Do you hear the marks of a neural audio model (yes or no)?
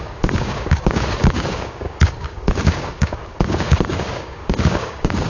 yes